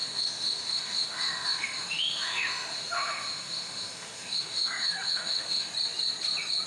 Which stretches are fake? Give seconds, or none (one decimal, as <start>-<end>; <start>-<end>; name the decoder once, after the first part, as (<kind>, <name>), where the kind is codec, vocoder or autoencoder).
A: 0.0-5.7 (autoencoder, DAC-VAE)

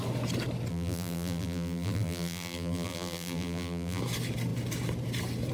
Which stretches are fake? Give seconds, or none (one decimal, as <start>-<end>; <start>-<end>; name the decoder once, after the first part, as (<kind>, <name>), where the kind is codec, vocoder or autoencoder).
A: 0.7-4.0 (vocoder, BigVGAN v2)

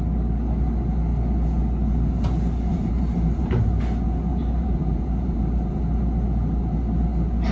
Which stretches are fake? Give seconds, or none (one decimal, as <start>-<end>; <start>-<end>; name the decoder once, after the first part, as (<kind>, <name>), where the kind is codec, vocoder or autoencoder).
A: 2.7-3.6 (vocoder, BigVGAN v2); 4.3-5.9

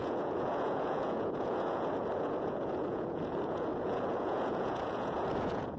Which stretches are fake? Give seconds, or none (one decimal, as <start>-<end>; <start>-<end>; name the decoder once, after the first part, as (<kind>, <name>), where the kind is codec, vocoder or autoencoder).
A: 0.0-5.8 (vocoder, Vocos)

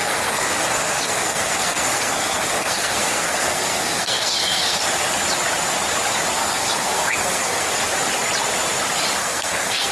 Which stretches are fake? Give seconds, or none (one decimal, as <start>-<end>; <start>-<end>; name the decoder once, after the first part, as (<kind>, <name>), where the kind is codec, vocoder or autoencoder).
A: 0.0-4.8 (codec, SNAC); 6.4-7.7; 9.2-9.9

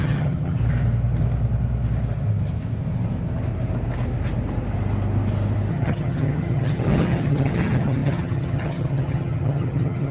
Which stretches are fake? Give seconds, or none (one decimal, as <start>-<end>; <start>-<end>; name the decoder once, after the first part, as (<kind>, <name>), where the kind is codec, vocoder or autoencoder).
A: 0.0-0.6 (vocoder, HiFi-GAN); 5.7-10.1

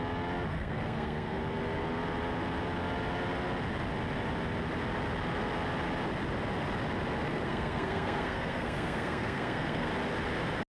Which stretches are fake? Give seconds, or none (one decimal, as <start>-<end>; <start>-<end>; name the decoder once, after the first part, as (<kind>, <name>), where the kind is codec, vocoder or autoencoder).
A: 0.5-1.4 (codec, SNAC); 7.3-9.9

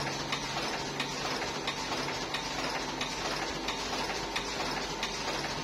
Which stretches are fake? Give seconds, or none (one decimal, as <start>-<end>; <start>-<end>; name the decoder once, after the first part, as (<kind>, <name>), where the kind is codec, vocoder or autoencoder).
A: none